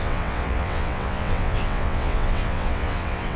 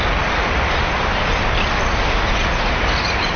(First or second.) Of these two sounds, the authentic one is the second